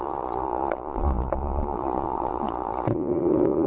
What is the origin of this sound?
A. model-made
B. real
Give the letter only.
A